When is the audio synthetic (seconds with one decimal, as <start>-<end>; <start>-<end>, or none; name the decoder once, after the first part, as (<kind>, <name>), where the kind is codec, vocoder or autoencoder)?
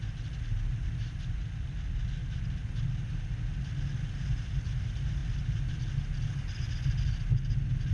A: none